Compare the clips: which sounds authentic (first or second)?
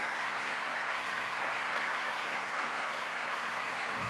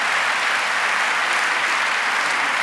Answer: second